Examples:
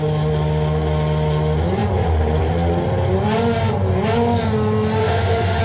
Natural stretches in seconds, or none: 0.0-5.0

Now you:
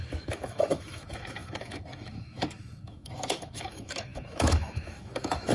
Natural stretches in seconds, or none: none

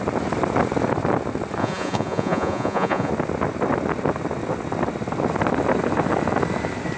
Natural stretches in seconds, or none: 0.0-1.6; 3.1-7.0